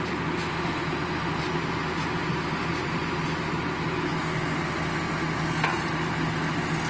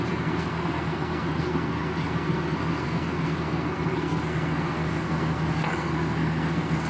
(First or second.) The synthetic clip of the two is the second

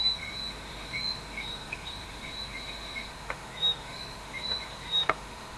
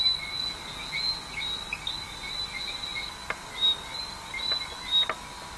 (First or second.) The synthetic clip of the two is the first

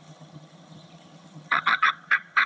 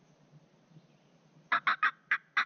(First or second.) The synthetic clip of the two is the first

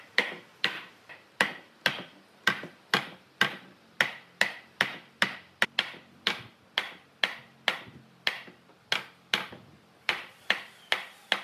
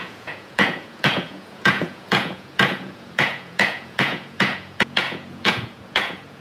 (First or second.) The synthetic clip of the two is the second